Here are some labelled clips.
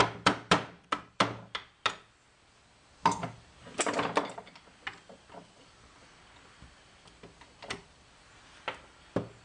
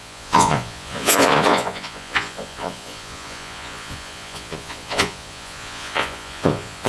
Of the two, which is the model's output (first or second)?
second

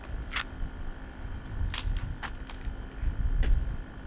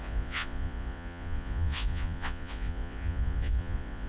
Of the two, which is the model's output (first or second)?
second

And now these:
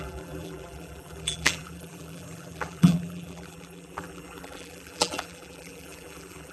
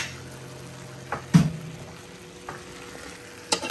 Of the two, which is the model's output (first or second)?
first